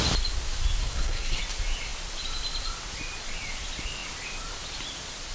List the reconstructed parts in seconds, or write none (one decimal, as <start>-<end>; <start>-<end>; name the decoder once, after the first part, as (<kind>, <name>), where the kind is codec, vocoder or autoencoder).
0.8-1.4 (codec, SNAC)